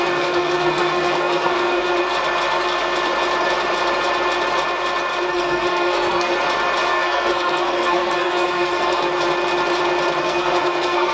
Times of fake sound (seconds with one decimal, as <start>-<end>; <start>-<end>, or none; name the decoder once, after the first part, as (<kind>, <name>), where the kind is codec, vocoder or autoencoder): 0.0-1.9 (codec, SNAC); 5.3-6.3; 6.9-9.1; 10.2-11.1